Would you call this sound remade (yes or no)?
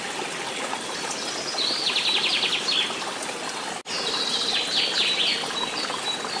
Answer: no